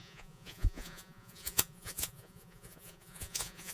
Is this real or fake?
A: fake